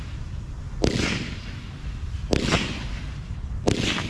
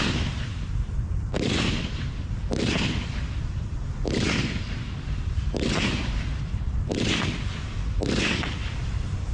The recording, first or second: first